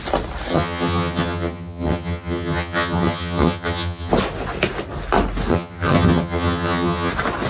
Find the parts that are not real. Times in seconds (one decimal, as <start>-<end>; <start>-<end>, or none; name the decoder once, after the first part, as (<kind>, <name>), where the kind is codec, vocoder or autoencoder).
0.5-4.1 (vocoder, HiFi-GAN); 5.5-7.1